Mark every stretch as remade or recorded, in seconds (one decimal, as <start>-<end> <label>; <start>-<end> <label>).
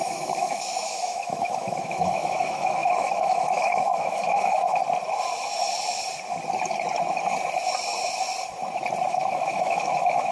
0.0-4.8 remade; 4.8-9.1 recorded; 9.1-10.3 remade